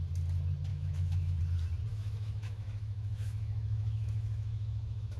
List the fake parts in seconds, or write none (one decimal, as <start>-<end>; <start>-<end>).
0.7-1.4; 1.9-5.2